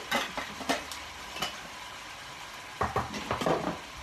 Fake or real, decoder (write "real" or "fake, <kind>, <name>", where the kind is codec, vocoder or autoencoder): real